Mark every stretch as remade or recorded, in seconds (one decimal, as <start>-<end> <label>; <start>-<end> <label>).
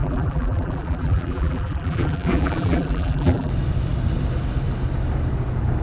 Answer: 0.0-3.5 remade; 3.5-5.8 recorded